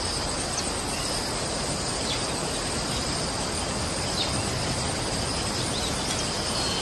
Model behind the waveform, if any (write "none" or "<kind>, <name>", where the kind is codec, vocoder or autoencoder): none